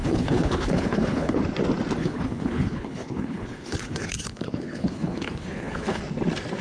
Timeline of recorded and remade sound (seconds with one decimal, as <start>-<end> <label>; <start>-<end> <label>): 0.0-1.4 remade; 1.4-2.0 recorded; 2.0-6.0 remade; 6.0-6.6 recorded